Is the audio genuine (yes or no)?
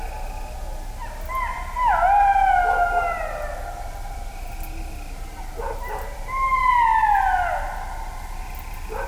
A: yes